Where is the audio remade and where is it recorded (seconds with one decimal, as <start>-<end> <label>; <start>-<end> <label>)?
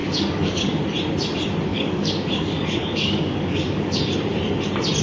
0.0-0.8 remade; 0.8-1.7 recorded; 1.7-4.0 remade; 4.0-5.0 recorded